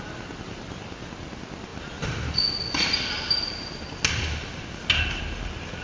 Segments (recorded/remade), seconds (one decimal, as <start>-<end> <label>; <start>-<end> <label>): 0.0-5.8 recorded